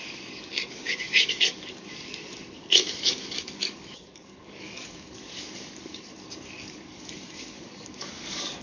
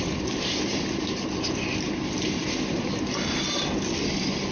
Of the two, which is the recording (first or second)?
second